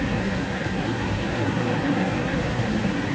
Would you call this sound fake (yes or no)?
yes